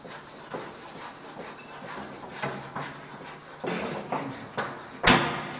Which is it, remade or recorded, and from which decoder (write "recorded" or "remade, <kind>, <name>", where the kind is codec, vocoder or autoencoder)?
recorded